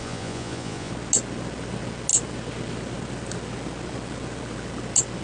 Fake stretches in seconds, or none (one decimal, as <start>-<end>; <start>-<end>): 0.0-0.9